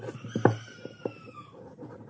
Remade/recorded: recorded